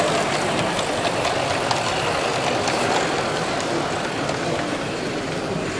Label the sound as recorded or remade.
recorded